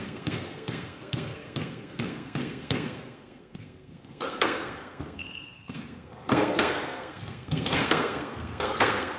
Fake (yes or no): yes